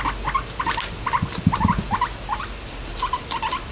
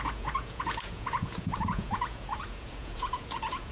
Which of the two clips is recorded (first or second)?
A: first